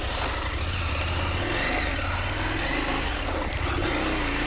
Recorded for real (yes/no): yes